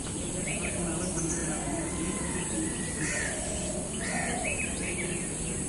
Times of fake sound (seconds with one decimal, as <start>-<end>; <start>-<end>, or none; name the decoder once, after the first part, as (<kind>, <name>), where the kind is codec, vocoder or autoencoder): none